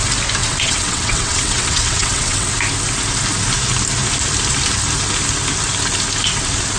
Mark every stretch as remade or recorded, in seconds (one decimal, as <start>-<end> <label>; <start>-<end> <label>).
0.0-0.4 recorded; 0.4-2.5 remade; 2.5-6.8 recorded